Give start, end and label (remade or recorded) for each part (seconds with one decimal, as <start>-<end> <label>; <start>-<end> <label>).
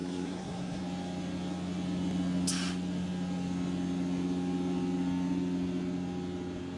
0.0-0.8 remade; 0.8-6.8 recorded